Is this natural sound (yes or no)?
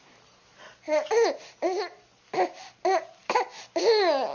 yes